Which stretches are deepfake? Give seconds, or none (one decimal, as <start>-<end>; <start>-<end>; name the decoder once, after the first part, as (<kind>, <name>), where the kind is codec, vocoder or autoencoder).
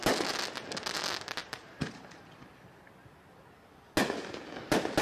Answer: 1.4-2.3 (vocoder, BigVGAN v2)